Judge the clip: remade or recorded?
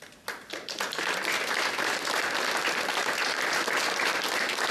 recorded